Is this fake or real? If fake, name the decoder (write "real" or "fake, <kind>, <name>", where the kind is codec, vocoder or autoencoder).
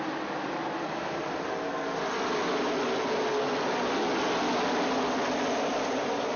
real